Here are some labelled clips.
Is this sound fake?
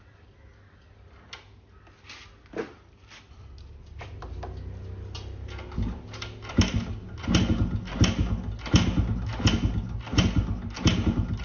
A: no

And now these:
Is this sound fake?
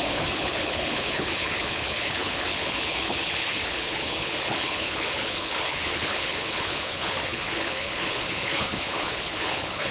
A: yes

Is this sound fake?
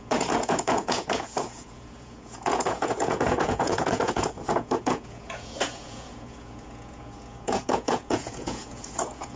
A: yes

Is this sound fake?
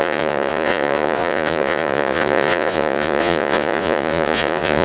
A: yes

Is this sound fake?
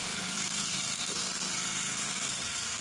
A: yes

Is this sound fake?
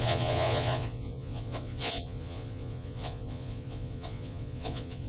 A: yes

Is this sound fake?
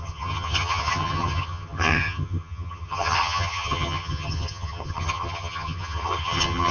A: yes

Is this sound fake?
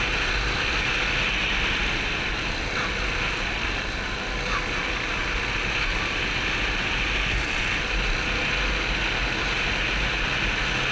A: no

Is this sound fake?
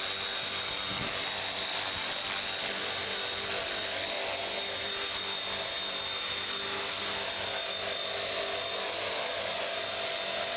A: no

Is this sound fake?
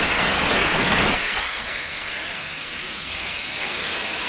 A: yes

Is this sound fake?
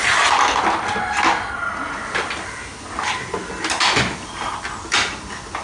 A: no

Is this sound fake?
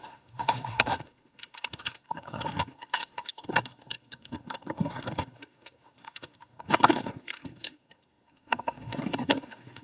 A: yes